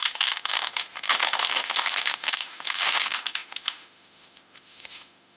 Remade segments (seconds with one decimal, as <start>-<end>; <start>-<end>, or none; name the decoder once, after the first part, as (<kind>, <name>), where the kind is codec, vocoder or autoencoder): 0.0-5.4 (autoencoder, DAC-VAE)